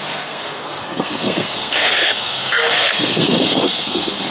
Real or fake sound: fake